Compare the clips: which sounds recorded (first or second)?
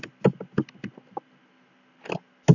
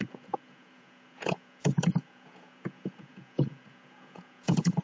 first